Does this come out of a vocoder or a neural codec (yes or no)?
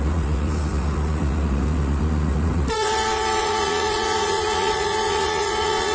yes